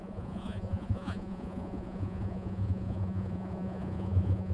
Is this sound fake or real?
fake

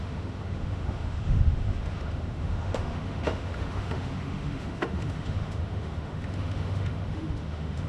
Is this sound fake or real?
fake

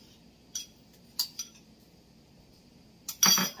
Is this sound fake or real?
real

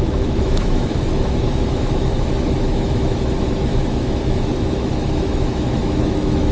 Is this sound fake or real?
fake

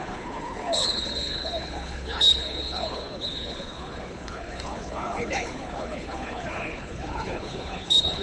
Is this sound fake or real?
fake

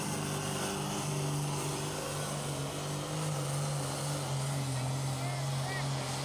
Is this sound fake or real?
real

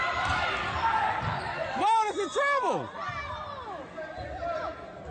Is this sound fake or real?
real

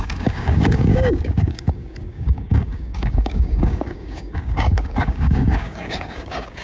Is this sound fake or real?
fake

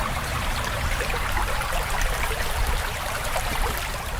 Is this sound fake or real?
fake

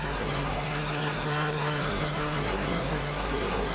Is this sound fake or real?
fake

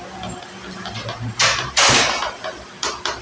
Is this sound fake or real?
real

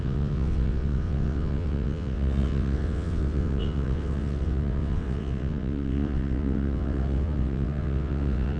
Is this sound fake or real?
fake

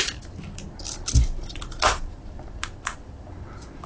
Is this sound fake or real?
real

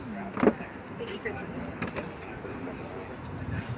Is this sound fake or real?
real